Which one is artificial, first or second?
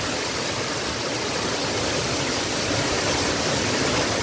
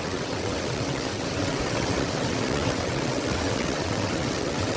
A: second